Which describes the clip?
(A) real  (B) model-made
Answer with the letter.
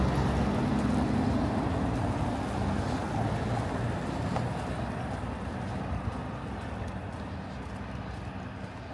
A